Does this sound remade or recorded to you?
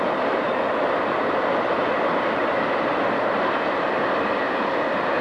recorded